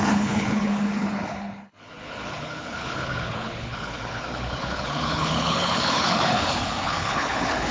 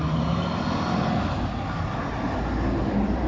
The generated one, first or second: first